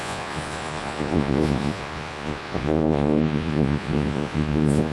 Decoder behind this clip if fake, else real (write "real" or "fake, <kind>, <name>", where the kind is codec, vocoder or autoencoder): fake, vocoder, Vocos